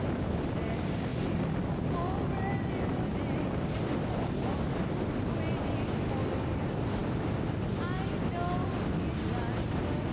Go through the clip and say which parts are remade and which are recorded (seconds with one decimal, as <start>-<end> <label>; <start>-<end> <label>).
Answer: 0.0-10.1 recorded